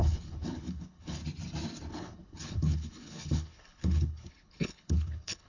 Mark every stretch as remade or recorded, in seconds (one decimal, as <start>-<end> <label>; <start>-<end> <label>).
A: 0.0-1.2 remade; 1.2-1.9 recorded; 1.9-5.5 remade